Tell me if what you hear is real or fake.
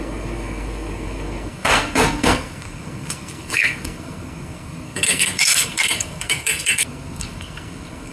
fake